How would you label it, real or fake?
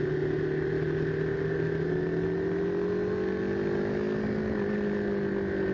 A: real